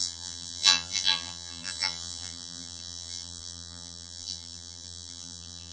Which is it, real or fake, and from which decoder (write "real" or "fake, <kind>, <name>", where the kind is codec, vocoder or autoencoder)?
fake, vocoder, BigVGAN v2